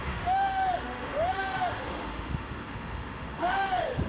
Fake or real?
fake